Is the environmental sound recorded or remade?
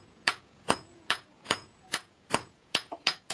remade